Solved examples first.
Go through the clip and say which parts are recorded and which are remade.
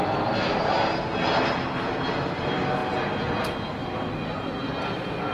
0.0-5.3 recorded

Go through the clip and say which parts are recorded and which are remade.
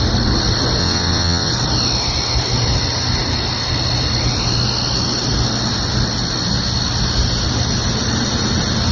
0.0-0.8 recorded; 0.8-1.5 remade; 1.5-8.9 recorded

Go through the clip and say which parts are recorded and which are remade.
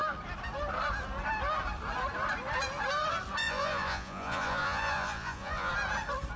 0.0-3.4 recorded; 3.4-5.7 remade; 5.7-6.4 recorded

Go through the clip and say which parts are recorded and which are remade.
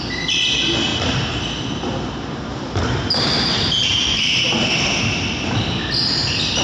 0.0-6.6 recorded